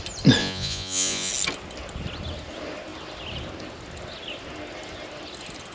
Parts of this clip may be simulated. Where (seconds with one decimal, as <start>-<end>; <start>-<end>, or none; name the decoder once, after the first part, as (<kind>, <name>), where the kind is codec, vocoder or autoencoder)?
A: 0.4-1.3 (vocoder, Vocos)